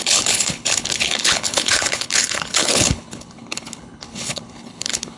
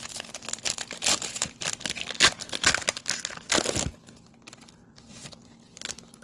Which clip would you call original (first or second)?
second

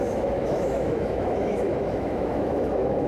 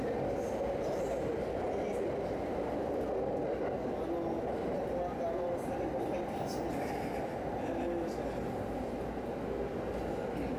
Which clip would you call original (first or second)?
second